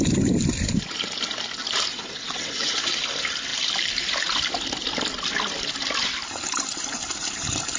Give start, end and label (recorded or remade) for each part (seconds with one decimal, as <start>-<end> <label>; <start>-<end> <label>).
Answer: 0.0-1.9 recorded; 1.9-2.9 remade; 2.9-7.8 recorded